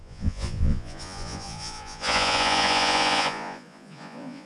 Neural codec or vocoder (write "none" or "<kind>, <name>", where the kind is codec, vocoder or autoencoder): vocoder, Vocos